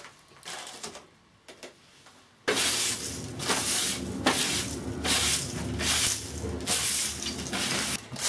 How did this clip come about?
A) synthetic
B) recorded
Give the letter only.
B